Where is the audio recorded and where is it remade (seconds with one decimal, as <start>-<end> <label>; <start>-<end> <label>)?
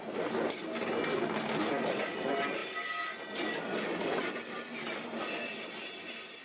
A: 0.0-6.4 recorded